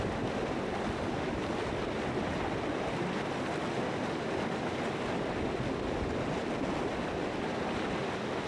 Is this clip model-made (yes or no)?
no